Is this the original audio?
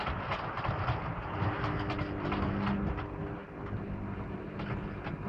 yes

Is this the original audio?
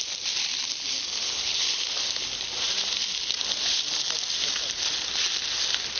yes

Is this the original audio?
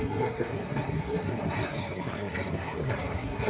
no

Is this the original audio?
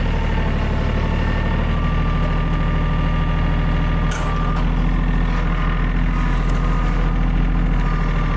yes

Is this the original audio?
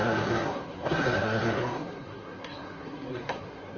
no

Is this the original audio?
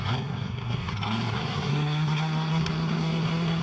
no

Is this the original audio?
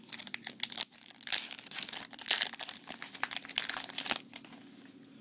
yes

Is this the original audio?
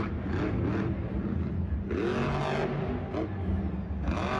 yes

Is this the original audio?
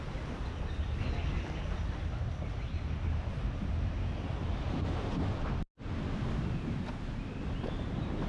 yes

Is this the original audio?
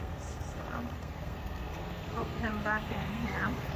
no